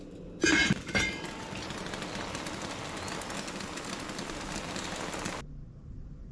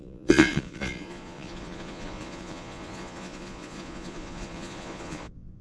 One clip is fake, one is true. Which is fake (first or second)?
second